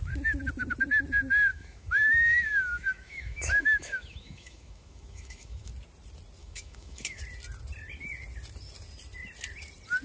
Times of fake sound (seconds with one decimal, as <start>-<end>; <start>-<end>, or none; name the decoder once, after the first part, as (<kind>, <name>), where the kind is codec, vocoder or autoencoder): 1.5-5.7 (autoencoder, DAC-VAE); 6.4-7.2